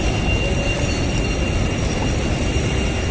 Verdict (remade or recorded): recorded